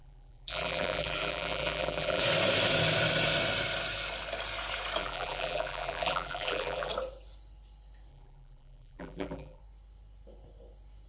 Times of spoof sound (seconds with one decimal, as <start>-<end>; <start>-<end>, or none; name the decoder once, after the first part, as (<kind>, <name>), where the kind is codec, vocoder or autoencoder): 0.0-2.2 (vocoder, BigVGAN v2); 5.0-6.9; 8.1-9.6